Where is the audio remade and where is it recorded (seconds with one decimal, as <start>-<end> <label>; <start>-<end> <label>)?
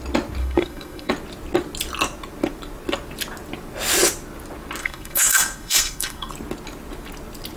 0.0-0.4 recorded; 0.4-1.1 remade; 1.1-4.8 recorded; 4.8-6.3 remade; 6.3-7.6 recorded